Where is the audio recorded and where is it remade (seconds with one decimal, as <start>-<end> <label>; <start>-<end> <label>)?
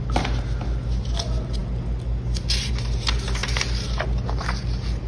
0.0-5.1 recorded